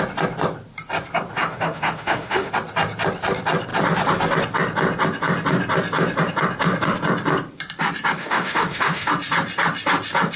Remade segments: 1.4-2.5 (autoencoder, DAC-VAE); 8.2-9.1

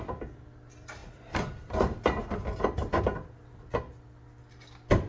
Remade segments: 1.0-3.0 (vocoder, BigVGAN v2)

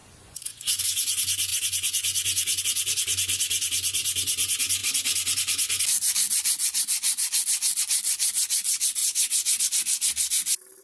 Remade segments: 0.0-0.8 (vocoder, Vocos); 1.5-2.6; 9.0-9.6

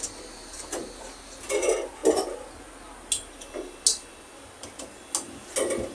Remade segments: none